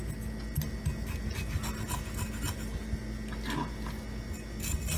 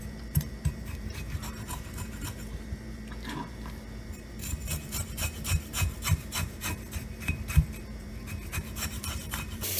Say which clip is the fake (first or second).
second